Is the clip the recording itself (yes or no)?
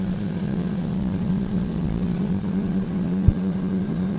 no